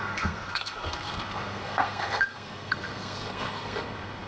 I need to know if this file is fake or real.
fake